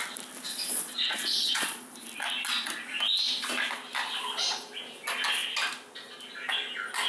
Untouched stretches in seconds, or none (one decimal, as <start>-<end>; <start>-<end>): 0.0-0.5; 1.8-7.1